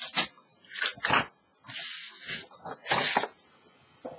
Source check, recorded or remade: recorded